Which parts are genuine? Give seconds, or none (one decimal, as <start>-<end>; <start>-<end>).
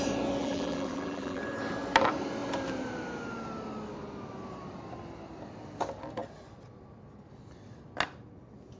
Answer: 0.0-0.4; 1.4-8.8